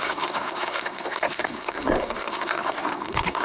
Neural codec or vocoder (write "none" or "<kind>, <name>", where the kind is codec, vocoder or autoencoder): codec, SNAC